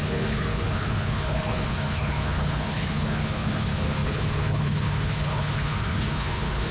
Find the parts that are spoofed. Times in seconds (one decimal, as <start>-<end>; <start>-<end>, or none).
0.0-6.7

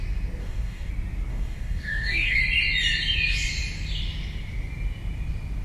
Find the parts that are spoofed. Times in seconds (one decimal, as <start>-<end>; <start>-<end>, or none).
0.4-0.9; 1.3-2.4

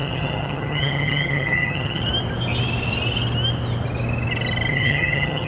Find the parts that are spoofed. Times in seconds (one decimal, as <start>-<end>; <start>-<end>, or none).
0.0-2.0; 4.7-5.5

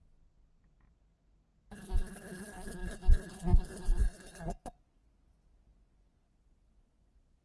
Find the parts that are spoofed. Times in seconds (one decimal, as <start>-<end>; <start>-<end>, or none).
2.8-7.4

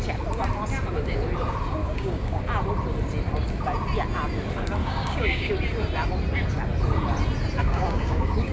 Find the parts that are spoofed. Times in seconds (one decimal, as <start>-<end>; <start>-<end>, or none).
1.8-2.4; 4.8-5.5; 7.6-8.5

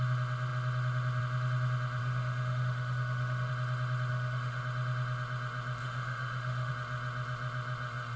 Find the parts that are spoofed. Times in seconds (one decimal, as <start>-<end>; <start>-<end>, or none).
2.0-3.5; 4.1-4.6; 5.8-6.7

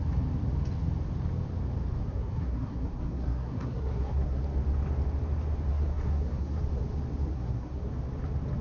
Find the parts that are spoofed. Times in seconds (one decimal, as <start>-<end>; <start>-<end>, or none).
2.0-4.4; 5.7-6.6; 7.3-7.9

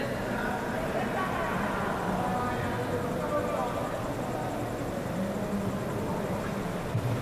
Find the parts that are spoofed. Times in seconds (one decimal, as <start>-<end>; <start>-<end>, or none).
none